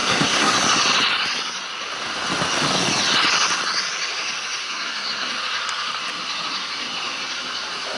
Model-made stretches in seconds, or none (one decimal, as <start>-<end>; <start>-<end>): 0.0-0.5; 4.6-5.3